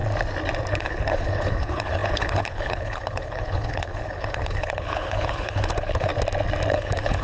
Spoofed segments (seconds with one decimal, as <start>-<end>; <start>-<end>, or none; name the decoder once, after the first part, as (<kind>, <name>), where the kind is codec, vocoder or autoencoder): 0.7-6.1 (codec, HILCodec); 6.7-7.2